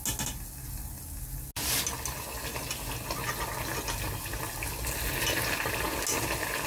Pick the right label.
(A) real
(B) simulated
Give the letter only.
A